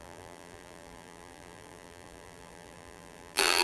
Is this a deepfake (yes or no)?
yes